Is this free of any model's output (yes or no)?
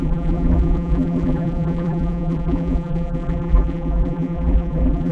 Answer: no